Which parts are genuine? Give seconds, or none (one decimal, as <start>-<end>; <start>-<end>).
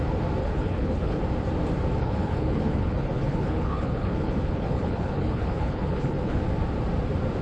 0.0-0.4; 1.2-2.0; 6.4-7.4